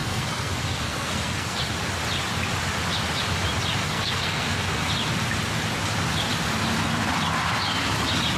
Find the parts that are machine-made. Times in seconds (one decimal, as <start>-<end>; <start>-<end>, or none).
0.0-1.6; 3.8-4.9